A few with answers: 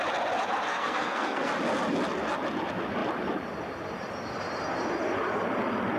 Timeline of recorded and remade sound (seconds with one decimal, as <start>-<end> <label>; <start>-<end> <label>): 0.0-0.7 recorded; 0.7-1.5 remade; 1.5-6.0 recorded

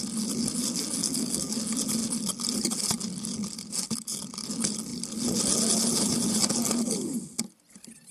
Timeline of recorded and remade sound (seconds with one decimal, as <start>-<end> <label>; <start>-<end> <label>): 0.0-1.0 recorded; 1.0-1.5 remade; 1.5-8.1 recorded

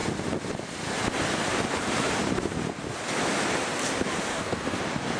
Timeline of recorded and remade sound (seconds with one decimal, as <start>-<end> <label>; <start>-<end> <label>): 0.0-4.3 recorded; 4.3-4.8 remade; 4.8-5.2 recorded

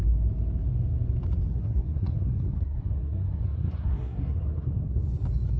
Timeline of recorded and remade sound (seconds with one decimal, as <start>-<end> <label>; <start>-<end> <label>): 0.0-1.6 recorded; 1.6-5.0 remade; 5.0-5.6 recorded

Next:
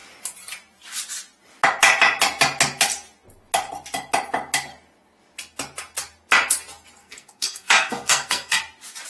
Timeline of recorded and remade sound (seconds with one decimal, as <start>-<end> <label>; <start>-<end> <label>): 0.0-7.0 recorded; 7.0-8.6 remade; 8.6-9.1 recorded

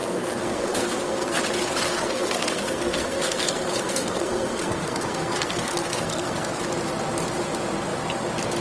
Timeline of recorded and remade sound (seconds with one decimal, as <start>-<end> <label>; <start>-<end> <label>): 0.0-1.4 remade; 1.4-1.9 recorded; 1.9-6.7 remade; 6.7-8.6 recorded